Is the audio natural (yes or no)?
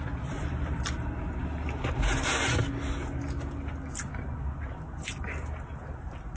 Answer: yes